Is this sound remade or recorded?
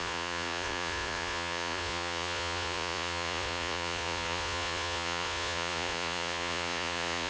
remade